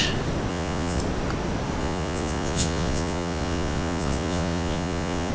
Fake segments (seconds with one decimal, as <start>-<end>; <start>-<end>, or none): 0.5-1.0; 1.8-5.3